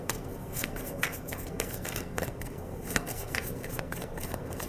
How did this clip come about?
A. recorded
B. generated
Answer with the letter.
B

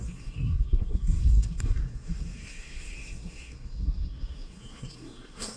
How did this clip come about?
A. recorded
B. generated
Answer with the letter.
B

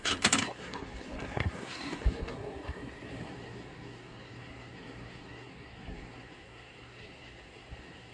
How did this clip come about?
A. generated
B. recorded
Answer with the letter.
A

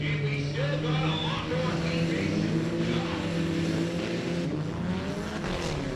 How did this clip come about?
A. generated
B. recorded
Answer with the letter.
B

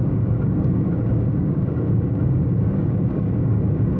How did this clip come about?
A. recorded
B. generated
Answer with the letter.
B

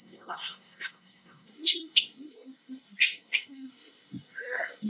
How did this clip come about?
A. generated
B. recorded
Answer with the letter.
A